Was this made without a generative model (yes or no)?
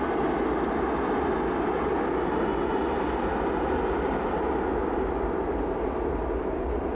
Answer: yes